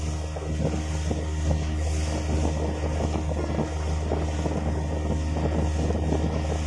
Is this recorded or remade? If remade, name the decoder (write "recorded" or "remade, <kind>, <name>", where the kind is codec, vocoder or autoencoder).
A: recorded